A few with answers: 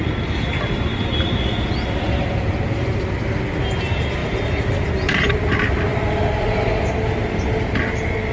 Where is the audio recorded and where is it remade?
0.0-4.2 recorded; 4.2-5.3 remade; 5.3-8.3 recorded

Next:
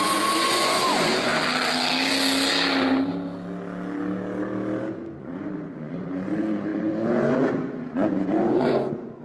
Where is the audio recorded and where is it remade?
0.0-1.3 remade; 1.3-5.2 recorded; 5.2-9.2 remade

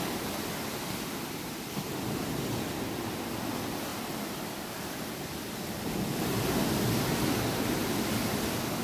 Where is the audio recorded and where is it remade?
0.0-3.9 recorded; 3.9-4.5 remade; 4.5-8.8 recorded

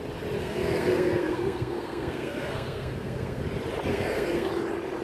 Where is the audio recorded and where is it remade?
0.0-0.4 recorded; 0.4-3.4 remade; 3.4-3.9 recorded; 3.9-4.5 remade; 4.5-5.0 recorded